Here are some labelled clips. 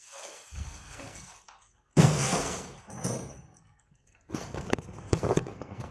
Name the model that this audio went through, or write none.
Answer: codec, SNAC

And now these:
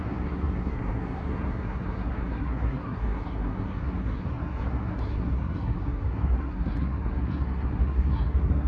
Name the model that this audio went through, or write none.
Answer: codec, SNAC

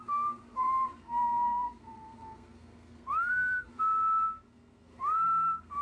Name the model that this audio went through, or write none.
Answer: codec, SNAC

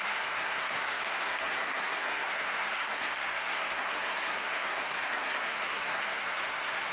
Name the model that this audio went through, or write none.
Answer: codec, SNAC